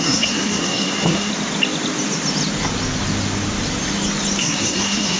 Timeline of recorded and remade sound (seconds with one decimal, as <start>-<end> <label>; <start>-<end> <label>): 0.0-1.3 remade; 1.3-4.4 recorded; 4.4-5.2 remade